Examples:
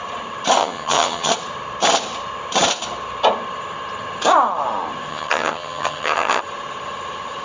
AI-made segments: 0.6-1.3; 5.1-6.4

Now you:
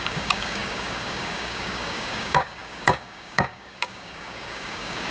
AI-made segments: 0.0-5.1

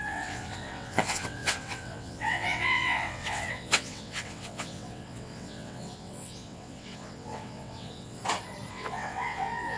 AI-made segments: 0.0-8.2; 8.7-9.8